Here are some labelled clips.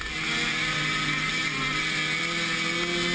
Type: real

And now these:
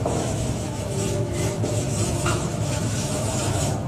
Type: fake